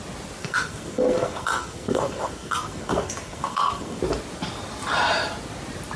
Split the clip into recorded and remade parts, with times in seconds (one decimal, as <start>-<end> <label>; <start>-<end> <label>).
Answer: 0.0-0.4 recorded; 0.4-4.0 remade; 4.0-6.0 recorded